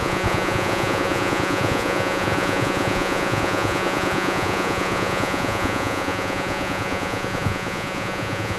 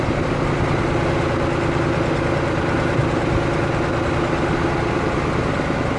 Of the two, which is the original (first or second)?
second